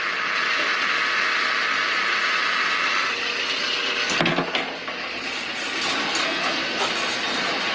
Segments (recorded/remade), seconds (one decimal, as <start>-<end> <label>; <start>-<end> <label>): 0.0-6.2 recorded; 6.2-6.8 remade; 6.8-7.7 recorded